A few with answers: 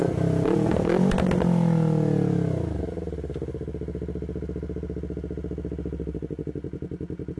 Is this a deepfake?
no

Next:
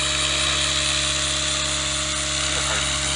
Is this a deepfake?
no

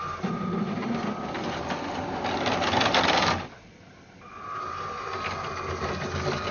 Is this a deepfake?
no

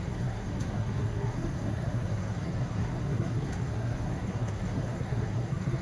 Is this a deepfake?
yes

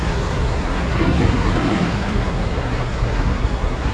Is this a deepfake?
yes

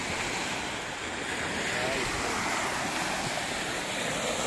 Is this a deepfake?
no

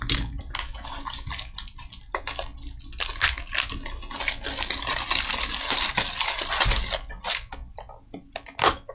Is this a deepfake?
no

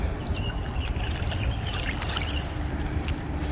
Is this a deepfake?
yes